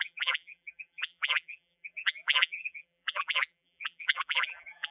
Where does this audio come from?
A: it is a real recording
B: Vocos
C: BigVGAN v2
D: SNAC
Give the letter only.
C